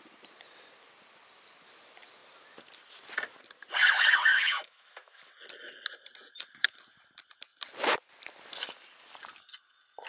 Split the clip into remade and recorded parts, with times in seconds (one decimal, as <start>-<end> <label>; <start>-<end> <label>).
0.0-4.3 recorded; 4.3-5.3 remade; 5.3-10.1 recorded